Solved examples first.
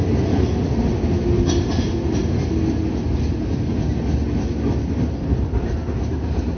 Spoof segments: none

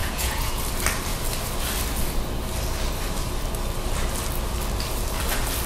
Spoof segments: 0.0-0.6 (vocoder, Vocos)

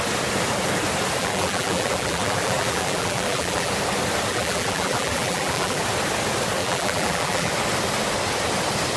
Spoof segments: 1.2-3.7 (vocoder, BigVGAN v2); 4.3-5.8; 6.6-7.5

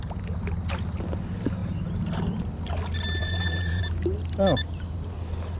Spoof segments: 3.2-3.8 (vocoder, Vocos)

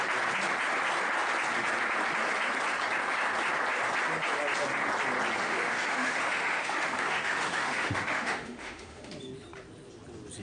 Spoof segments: 5.4-9.1 (autoencoder, DAC-VAE)

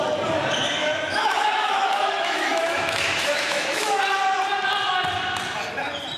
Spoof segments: 0.8-4.0 (autoencoder, DAC-VAE)